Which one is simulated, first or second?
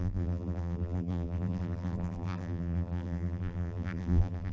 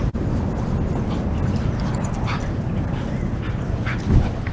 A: first